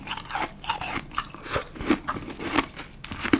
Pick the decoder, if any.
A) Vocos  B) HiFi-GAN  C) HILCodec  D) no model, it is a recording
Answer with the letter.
D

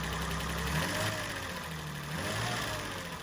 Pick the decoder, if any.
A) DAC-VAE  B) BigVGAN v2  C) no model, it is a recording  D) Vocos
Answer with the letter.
C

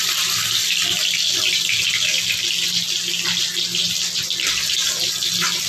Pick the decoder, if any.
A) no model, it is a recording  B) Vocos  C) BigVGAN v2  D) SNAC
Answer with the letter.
A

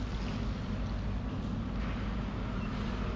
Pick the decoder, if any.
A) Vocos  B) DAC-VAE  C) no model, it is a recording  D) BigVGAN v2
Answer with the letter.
C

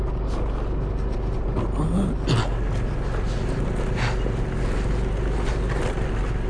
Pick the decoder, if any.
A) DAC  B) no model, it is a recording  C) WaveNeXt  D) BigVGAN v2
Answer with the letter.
B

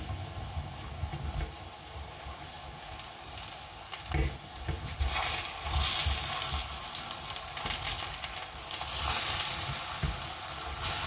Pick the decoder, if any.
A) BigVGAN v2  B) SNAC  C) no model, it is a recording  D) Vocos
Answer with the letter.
C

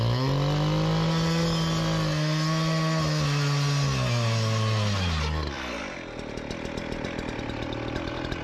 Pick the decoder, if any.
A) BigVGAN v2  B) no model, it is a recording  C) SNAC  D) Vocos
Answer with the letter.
B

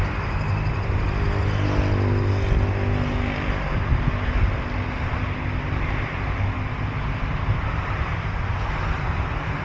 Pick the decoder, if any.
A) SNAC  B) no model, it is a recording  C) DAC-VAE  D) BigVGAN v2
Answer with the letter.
B